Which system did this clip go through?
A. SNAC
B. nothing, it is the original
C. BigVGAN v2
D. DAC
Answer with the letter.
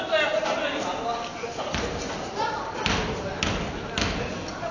B